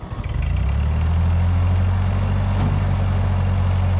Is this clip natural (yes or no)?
yes